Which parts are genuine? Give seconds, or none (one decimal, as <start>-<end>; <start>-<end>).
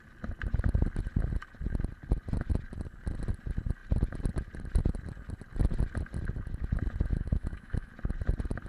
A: 0.0-7.1; 7.9-8.7